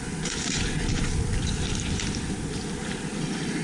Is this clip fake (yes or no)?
yes